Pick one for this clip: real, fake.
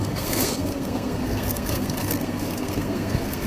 fake